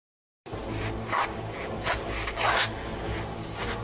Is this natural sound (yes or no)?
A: yes